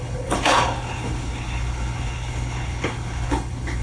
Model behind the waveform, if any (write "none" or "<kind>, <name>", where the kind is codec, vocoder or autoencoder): codec, HILCodec